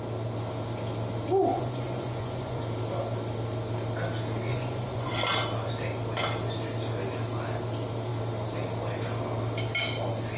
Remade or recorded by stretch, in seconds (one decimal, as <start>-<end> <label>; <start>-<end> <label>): 0.0-1.5 recorded; 1.5-2.6 remade; 2.6-4.5 recorded; 4.5-5.1 remade; 5.1-10.4 recorded